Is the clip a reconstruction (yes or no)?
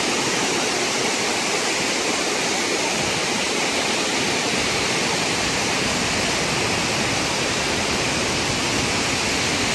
no